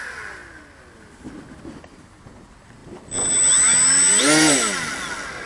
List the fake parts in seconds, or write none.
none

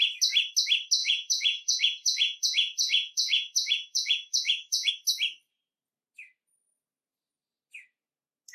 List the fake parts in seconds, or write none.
1.0-4.9 (vocoder, Vocos)

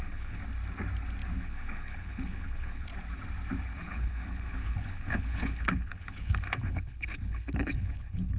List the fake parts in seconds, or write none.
0.0-0.4 (codec, HILCodec); 1.4-2.9; 3.8-8.4

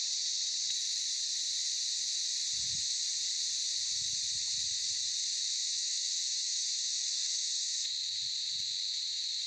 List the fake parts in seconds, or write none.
5.6-7.9 (autoencoder, DAC-VAE)

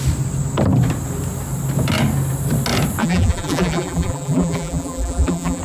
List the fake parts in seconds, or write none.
3.0-5.6 (vocoder, BigVGAN v2)

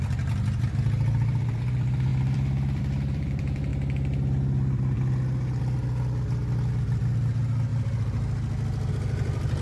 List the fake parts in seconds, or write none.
0.0-3.7 (vocoder, BigVGAN v2); 5.6-7.7; 8.9-9.6

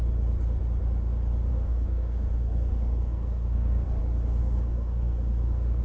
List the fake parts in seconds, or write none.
1.5-4.0 (codec, SNAC); 4.4-5.8

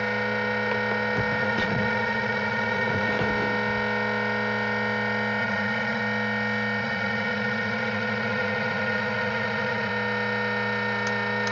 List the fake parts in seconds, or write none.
1.4-3.1 (vocoder, Vocos); 5.4-6.0; 6.8-9.9